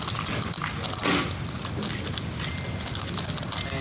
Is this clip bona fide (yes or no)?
yes